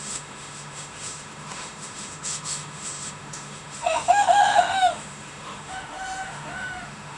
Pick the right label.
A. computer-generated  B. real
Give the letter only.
A